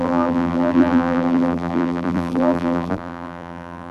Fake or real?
fake